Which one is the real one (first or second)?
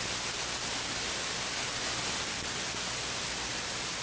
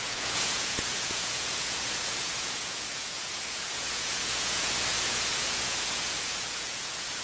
first